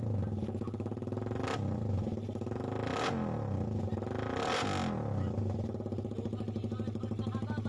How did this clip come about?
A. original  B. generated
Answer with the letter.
A